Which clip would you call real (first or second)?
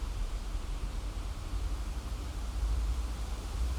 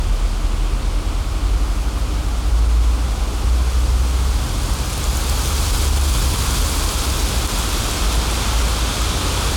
second